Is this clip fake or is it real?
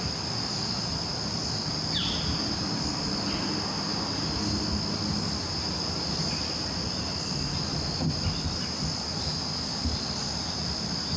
real